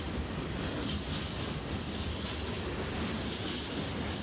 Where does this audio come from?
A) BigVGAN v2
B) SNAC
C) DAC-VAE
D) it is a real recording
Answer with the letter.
D